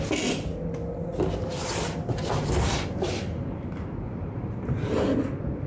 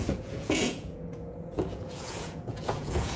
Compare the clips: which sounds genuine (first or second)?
first